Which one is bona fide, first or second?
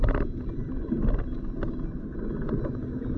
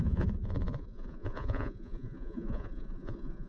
first